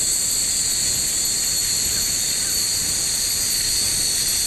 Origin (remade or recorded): recorded